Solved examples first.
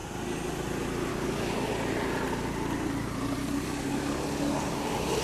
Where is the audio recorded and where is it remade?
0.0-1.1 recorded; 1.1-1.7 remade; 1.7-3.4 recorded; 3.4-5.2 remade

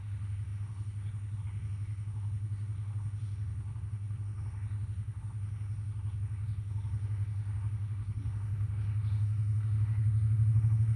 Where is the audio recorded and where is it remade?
0.0-11.0 remade

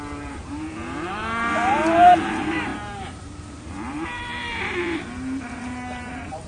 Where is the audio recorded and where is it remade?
0.0-6.5 remade

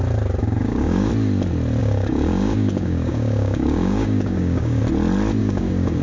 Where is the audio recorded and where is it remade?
0.0-0.4 recorded; 0.4-1.1 remade; 1.1-1.8 recorded; 1.8-4.8 remade; 4.8-5.4 recorded; 5.4-6.0 remade

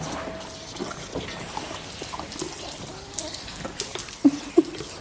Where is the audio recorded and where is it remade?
0.0-5.0 recorded

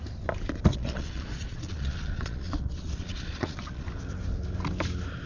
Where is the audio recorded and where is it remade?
0.0-0.7 recorded; 0.7-3.9 remade; 3.9-5.3 recorded

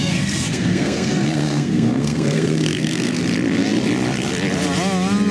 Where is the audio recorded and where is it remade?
0.0-3.2 remade; 3.2-5.3 recorded

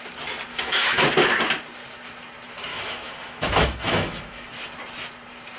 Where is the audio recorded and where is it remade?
0.0-0.5 recorded; 0.5-1.0 remade; 1.0-2.7 recorded; 2.7-4.5 remade; 4.5-5.6 recorded